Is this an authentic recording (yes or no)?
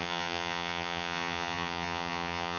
no